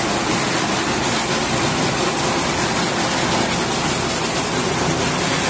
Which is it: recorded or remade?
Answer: recorded